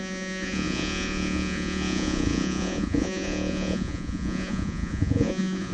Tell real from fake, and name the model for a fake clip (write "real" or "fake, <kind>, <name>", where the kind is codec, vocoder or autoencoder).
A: fake, vocoder, Vocos